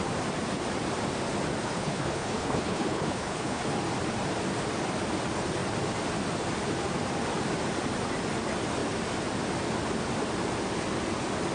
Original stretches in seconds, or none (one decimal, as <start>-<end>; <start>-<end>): 0.0-1.6; 3.6-11.5